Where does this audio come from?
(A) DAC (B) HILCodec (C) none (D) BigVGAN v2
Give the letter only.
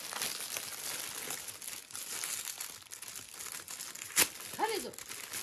C